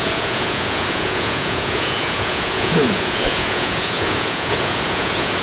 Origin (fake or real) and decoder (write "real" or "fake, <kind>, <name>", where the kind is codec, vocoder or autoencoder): fake, vocoder, Vocos